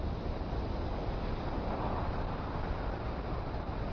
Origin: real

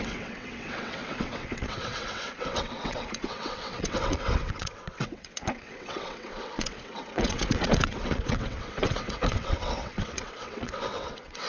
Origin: fake